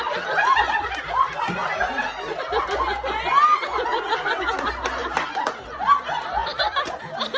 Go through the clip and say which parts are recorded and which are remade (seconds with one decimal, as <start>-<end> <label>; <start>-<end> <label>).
0.0-7.4 recorded